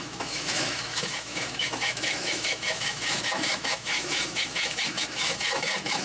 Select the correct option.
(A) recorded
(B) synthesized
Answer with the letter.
B